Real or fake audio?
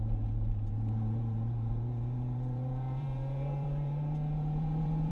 fake